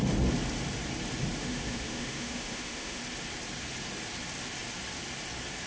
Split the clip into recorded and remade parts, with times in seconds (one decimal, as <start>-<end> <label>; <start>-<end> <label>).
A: 0.0-1.4 recorded; 1.4-3.0 remade; 3.0-5.7 recorded